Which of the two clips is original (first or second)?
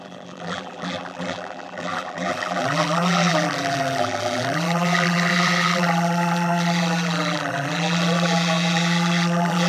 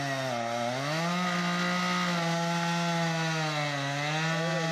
second